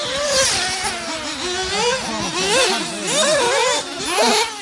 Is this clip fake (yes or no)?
no